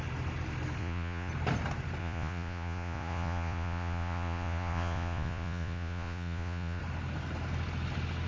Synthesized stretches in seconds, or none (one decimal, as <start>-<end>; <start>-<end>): 0.8-1.3; 2.0-6.8